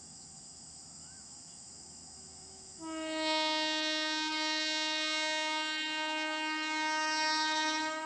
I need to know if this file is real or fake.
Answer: fake